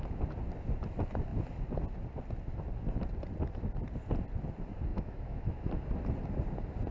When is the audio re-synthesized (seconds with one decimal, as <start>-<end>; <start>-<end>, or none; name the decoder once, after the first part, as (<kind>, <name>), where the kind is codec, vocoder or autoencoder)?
4.9-5.7 (autoencoder, DAC-VAE)